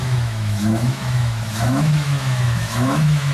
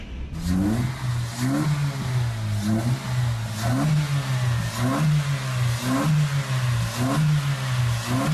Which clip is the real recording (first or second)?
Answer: second